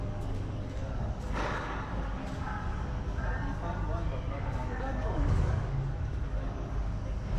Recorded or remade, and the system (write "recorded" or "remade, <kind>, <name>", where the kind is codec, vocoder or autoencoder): remade, codec, DAC